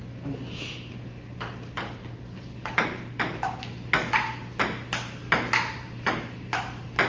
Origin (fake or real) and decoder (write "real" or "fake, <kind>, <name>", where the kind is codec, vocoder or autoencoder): real